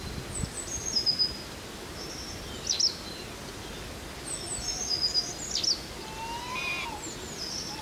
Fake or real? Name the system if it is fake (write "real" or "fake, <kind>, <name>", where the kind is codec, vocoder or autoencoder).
real